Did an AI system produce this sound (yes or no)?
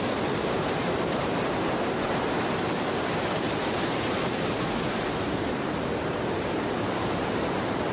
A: yes